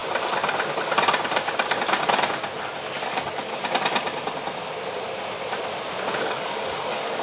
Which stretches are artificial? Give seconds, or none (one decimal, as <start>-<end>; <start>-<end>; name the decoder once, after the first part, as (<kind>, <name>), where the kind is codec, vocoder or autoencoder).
3.0-3.5 (codec, DAC); 6.2-7.2

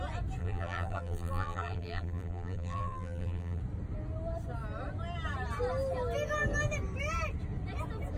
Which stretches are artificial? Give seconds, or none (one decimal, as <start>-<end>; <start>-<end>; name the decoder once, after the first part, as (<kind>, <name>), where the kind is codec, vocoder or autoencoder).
0.4-3.6 (vocoder, BigVGAN v2)

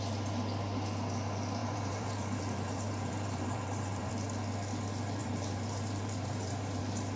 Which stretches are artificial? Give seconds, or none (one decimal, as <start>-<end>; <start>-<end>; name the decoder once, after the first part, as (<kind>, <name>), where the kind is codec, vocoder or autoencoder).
1.6-4.1 (vocoder, BigVGAN v2); 5.2-6.8